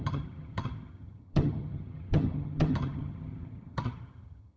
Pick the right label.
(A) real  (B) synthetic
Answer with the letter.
B